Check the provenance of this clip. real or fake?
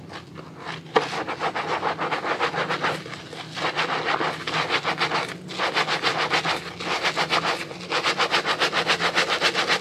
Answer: real